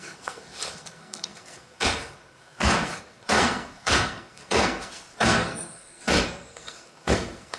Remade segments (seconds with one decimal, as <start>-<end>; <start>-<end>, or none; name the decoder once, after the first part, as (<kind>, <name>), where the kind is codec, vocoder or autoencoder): 0.0-7.6 (codec, SNAC)